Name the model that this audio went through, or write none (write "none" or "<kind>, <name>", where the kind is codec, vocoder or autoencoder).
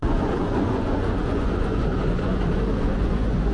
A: vocoder, Vocos